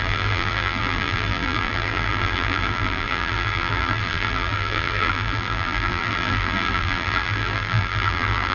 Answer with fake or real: fake